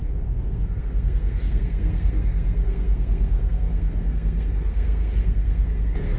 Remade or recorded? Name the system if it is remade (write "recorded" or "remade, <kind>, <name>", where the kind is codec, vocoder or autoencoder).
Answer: remade, codec, SNAC